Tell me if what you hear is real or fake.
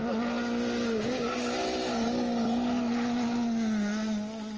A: real